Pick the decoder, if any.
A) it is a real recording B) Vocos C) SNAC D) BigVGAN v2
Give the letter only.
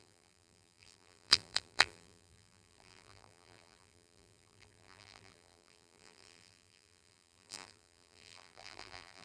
D